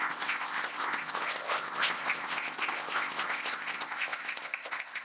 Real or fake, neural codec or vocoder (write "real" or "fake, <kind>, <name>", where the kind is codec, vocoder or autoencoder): fake, codec, ZipCodec